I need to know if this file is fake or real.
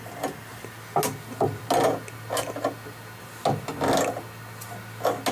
real